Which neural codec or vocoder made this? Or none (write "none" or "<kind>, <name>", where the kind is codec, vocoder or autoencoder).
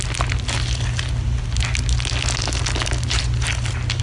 none